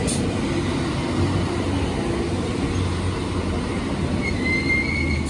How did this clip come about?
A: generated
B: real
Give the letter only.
B